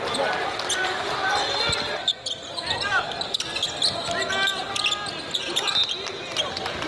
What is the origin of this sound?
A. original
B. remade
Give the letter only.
A